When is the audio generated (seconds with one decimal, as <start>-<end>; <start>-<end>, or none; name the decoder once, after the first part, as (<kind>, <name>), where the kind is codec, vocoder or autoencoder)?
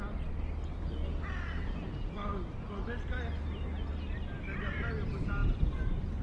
none